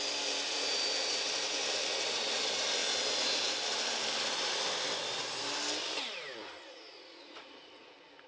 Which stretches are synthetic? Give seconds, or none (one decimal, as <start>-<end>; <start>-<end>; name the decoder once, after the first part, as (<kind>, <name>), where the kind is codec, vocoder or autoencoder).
6.7-7.9 (vocoder, Vocos)